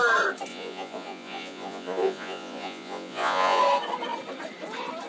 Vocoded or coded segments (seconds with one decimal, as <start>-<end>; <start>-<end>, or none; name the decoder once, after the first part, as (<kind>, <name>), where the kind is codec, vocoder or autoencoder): 0.5-3.6 (vocoder, Vocos)